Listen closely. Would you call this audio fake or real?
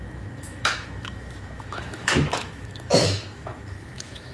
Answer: fake